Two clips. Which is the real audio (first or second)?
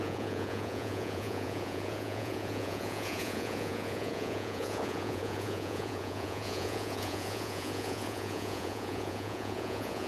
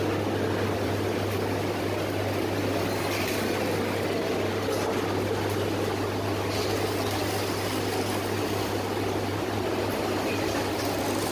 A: second